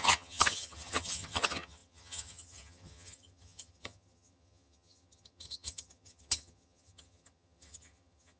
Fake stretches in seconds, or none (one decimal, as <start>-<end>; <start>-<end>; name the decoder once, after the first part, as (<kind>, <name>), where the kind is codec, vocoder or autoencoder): 0.0-8.4 (vocoder, HiFi-GAN)